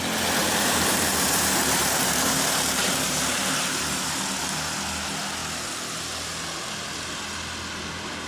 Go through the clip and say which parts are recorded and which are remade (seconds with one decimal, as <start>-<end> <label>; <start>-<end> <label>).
0.0-0.4 recorded; 0.4-3.8 remade; 3.8-8.3 recorded

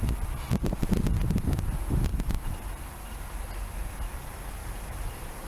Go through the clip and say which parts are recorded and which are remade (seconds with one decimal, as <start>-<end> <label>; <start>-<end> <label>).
0.0-4.6 recorded; 4.6-5.5 remade